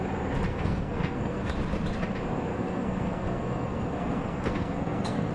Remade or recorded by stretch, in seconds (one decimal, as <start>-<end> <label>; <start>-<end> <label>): 0.0-0.5 recorded; 0.5-1.5 remade; 1.5-2.5 recorded; 2.5-5.3 remade